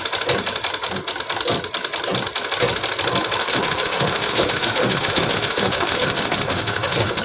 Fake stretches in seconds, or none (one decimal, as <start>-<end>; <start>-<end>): 3.4-7.2